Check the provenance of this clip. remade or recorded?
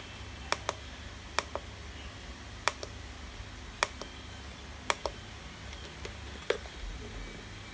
recorded